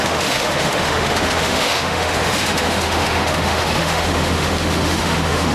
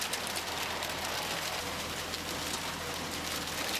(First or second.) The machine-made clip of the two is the first